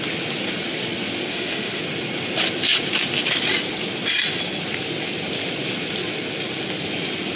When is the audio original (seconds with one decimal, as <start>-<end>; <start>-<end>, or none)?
0.0-1.3; 1.8-7.4